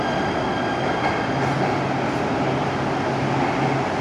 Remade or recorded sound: recorded